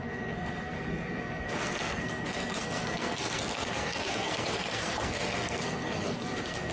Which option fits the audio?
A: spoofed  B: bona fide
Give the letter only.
A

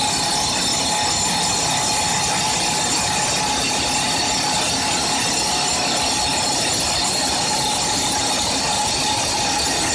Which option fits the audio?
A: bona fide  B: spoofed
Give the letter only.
A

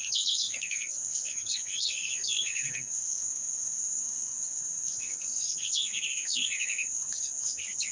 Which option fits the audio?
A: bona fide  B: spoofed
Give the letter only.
B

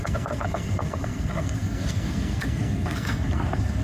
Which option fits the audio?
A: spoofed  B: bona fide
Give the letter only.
A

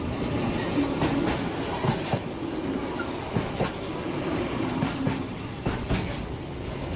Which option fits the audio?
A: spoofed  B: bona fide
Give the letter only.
B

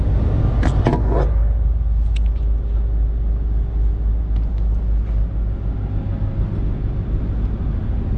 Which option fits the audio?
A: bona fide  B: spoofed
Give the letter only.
A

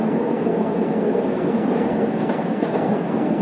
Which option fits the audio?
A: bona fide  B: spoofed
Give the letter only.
B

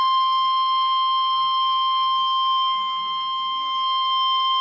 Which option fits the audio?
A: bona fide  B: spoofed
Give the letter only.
B